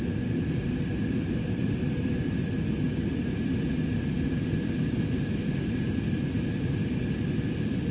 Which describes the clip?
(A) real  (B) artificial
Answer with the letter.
A